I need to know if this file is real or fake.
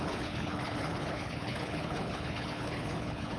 fake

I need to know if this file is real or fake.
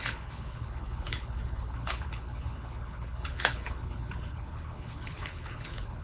fake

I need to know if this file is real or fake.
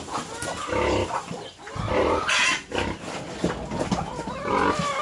real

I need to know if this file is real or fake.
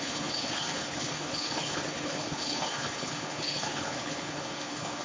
fake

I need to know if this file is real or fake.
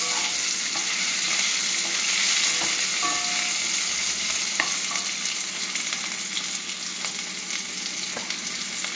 real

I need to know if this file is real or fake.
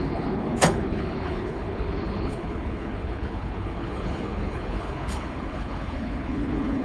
fake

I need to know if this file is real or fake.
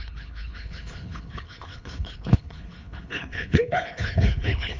fake